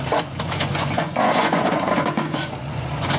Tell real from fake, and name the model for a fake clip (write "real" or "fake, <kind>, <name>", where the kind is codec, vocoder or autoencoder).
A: fake, vocoder, Vocos